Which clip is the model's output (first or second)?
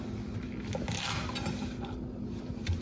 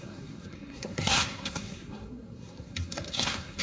second